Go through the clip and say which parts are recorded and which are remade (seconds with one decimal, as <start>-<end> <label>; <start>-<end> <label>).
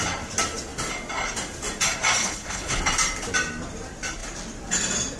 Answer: 0.0-2.2 recorded; 2.2-2.8 remade; 2.8-5.2 recorded